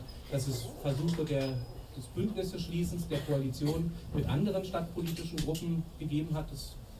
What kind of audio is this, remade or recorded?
recorded